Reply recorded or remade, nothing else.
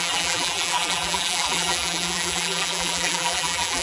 remade